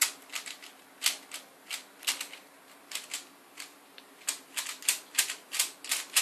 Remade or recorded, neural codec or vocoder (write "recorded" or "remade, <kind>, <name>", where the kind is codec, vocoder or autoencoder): recorded